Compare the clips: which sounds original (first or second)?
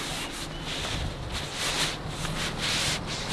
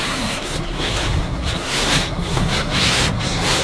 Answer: first